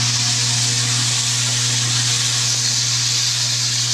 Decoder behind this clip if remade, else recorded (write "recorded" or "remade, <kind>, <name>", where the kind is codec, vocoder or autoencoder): recorded